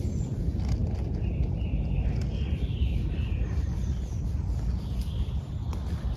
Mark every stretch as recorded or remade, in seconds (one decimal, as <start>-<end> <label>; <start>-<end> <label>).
0.0-6.2 recorded